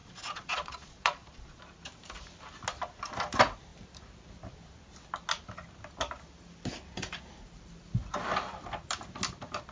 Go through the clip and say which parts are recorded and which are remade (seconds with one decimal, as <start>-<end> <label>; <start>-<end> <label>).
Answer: 0.0-1.6 remade; 1.6-9.7 recorded